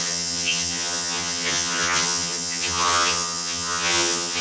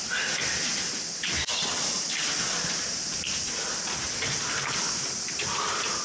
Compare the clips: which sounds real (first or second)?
second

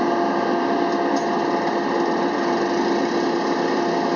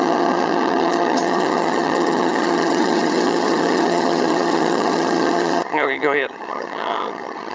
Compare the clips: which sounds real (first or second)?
first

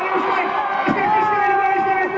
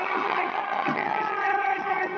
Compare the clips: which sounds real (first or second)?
first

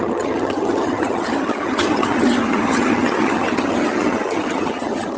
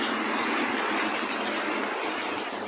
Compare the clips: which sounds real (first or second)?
second